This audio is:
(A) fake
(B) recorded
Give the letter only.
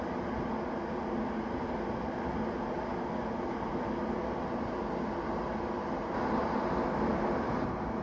B